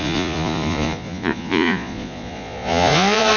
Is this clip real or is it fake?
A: fake